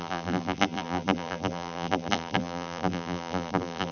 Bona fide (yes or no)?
no